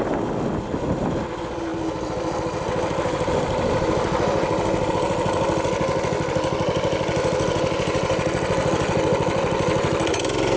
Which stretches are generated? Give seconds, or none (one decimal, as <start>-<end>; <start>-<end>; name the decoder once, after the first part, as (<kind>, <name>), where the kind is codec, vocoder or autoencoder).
none